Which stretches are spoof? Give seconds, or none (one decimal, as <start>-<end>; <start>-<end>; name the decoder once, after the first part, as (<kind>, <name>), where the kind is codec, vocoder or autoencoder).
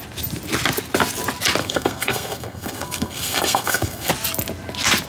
1.6-4.1 (codec, SNAC)